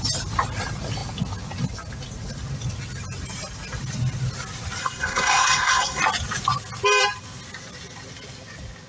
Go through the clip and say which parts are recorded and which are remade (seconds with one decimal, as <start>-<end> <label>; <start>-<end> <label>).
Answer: 0.0-4.8 recorded; 4.8-6.0 remade; 6.0-8.9 recorded